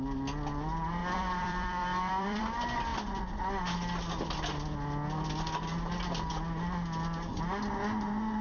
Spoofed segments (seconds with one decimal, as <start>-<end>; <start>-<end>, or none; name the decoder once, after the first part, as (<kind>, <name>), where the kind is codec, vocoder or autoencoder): 1.0-2.4 (vocoder, BigVGAN v2)